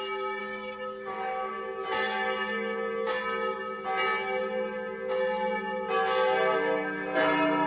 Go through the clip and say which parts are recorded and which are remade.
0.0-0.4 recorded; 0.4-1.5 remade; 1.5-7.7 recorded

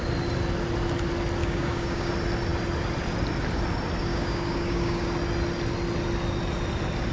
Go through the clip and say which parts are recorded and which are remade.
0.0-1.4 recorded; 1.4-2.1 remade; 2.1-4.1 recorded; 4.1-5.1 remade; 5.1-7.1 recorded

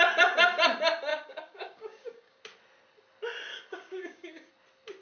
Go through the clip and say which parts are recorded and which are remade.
0.0-1.1 recorded; 1.1-2.4 remade; 2.4-3.5 recorded; 3.5-4.5 remade; 4.5-5.0 recorded

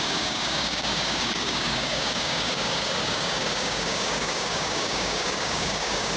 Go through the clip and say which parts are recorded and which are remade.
0.0-6.2 remade

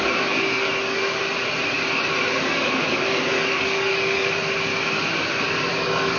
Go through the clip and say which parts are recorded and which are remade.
0.0-1.2 remade; 1.2-2.2 recorded; 2.2-4.7 remade; 4.7-5.7 recorded; 5.7-6.2 remade